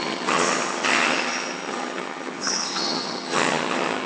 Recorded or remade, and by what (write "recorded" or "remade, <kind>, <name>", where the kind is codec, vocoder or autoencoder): remade, vocoder, HiFi-GAN